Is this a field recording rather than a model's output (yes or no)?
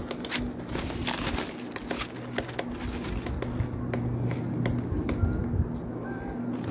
yes